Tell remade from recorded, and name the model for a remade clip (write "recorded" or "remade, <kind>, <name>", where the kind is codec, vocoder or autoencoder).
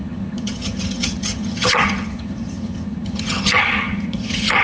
remade, vocoder, HiFi-GAN